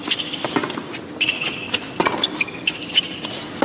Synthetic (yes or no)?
no